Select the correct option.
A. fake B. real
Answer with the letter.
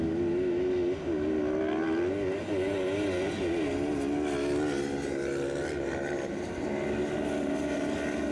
B